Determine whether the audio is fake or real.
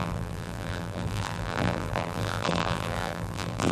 fake